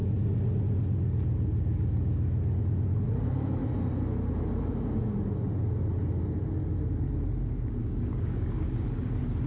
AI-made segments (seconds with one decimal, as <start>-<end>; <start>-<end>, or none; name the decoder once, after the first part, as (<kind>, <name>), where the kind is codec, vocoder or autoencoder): 7.8-9.1 (codec, DAC)